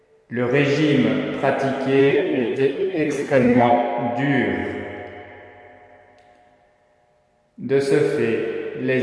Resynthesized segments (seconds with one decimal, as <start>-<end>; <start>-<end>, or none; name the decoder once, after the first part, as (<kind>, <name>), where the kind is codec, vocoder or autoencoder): 2.0-3.7 (codec, SNAC)